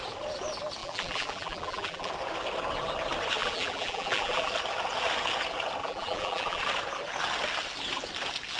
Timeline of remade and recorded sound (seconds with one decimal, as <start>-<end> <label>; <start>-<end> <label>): 0.0-0.8 recorded; 0.8-2.1 remade; 2.1-3.4 recorded; 3.4-4.5 remade; 4.5-5.8 recorded; 5.8-6.6 remade; 6.6-8.6 recorded